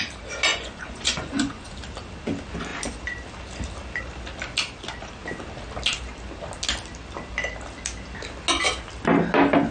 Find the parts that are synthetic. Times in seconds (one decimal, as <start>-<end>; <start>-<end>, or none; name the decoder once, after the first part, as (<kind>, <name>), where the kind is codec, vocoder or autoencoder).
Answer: 0.5-1.7 (vocoder, Vocos)